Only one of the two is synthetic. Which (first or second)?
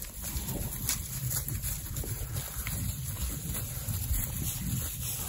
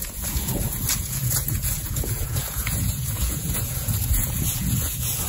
second